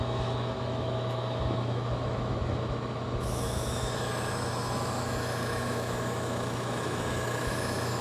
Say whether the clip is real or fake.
fake